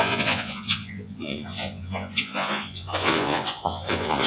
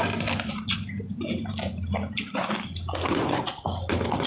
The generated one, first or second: first